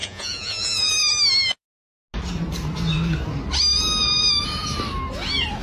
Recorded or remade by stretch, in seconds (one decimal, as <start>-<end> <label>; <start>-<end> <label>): 0.0-0.9 remade; 0.9-5.6 recorded